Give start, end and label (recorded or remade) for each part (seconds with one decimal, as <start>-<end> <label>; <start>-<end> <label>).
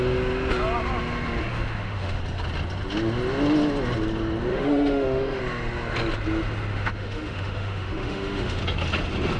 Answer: 0.0-1.5 recorded; 1.5-2.2 remade; 2.2-4.5 recorded; 4.5-5.4 remade; 5.4-6.7 recorded; 6.7-8.6 remade; 8.6-9.4 recorded